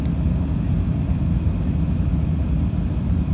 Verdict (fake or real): real